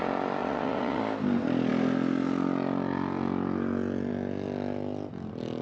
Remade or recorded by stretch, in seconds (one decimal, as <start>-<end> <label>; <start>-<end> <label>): 0.0-0.4 recorded; 0.4-1.0 remade; 1.0-5.6 recorded